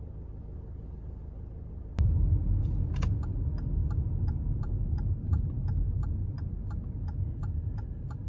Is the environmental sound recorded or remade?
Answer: recorded